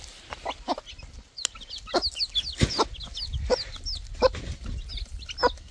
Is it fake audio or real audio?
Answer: real